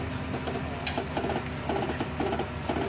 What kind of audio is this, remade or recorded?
recorded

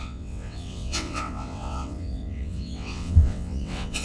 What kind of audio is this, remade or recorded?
remade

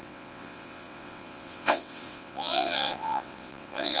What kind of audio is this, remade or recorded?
remade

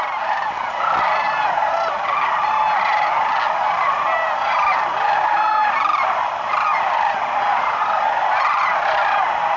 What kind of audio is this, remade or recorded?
recorded